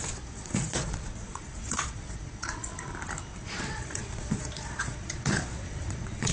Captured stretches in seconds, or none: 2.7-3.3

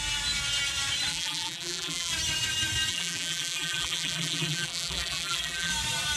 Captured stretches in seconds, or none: 0.0-1.1; 2.1-2.9; 5.7-6.2

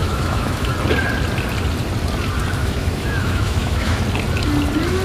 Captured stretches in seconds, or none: 0.7-2.6; 4.0-5.0